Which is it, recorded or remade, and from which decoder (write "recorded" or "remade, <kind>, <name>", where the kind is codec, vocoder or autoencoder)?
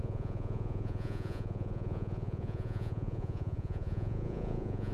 remade, vocoder, Vocos